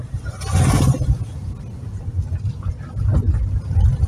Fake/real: real